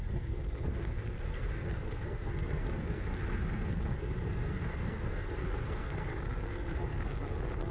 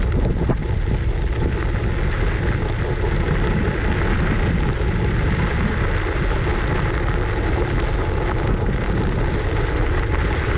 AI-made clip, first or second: first